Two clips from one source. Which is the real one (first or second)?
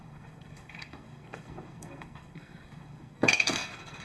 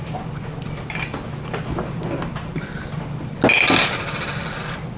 second